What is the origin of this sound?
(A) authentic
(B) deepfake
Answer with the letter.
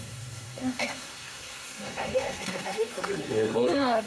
B